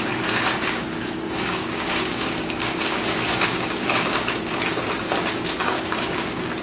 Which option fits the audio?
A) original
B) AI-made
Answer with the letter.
B